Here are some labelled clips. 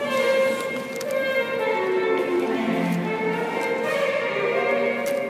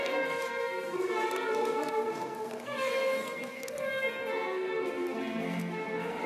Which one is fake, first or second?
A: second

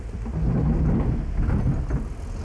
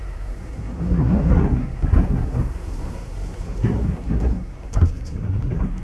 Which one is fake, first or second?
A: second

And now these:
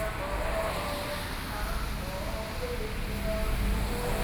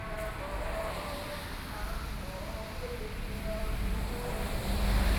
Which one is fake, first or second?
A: second